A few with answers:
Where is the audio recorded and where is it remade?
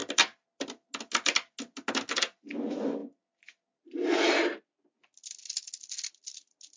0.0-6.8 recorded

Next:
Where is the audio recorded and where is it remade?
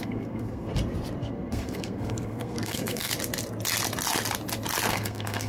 0.0-0.7 remade; 0.7-1.2 recorded; 1.2-3.1 remade; 3.1-4.9 recorded; 4.9-5.5 remade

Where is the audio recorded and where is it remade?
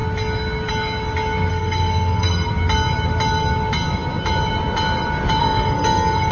0.0-1.5 recorded; 1.5-2.5 remade; 2.5-5.4 recorded; 5.4-6.3 remade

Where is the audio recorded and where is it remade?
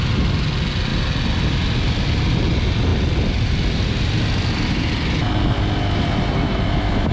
0.0-7.1 recorded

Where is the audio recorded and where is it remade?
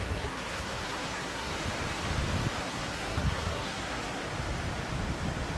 0.0-1.5 remade; 1.5-2.6 recorded; 2.6-4.2 remade; 4.2-5.6 recorded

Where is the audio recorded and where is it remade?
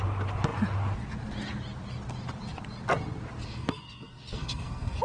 0.0-3.4 recorded; 3.4-5.0 remade